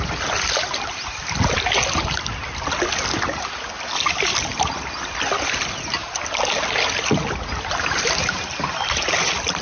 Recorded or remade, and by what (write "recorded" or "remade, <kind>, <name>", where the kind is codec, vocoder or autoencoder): recorded